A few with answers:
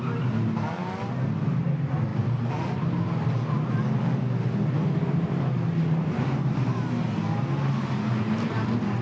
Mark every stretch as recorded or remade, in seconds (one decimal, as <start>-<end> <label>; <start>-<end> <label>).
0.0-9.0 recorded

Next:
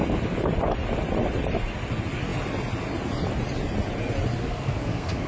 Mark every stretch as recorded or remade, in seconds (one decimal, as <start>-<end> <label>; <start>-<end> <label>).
0.0-4.4 recorded; 4.4-5.3 remade

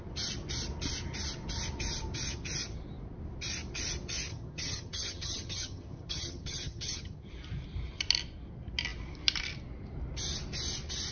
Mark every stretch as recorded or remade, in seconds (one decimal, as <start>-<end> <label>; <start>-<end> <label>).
0.0-4.3 recorded; 4.3-7.3 remade; 7.3-11.1 recorded

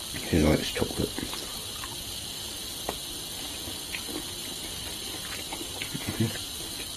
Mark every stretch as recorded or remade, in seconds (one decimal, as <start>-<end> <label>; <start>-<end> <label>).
0.0-0.4 recorded; 0.4-1.8 remade; 1.8-4.4 recorded; 4.4-5.7 remade; 5.7-7.0 recorded

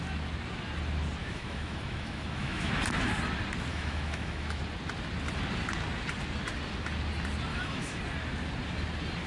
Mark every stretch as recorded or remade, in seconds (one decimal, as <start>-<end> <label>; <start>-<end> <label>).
0.0-1.2 recorded; 1.2-2.7 remade; 2.7-3.7 recorded; 3.7-4.6 remade; 4.6-7.5 recorded; 7.5-8.0 remade; 8.0-9.3 recorded

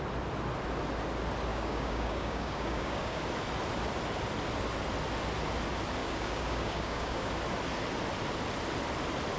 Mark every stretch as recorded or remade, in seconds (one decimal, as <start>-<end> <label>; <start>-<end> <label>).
0.0-1.5 recorded; 1.5-3.2 remade; 3.2-6.0 recorded; 6.0-7.3 remade; 7.3-9.4 recorded

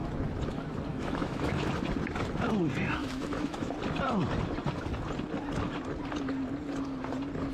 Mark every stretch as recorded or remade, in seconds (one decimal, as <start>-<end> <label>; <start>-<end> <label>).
0.0-0.9 recorded; 0.9-1.7 remade; 1.7-3.0 recorded; 3.0-3.7 remade; 3.7-7.5 recorded